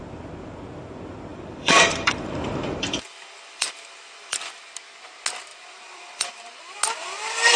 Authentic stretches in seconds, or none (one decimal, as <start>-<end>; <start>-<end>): 0.0-1.3; 4.7-5.5; 6.5-7.6